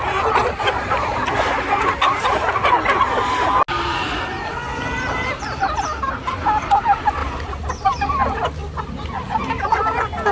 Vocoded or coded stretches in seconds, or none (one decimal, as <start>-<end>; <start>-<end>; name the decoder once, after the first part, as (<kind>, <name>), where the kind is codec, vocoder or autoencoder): 4.5-5.6 (vocoder, BigVGAN v2); 7.2-7.7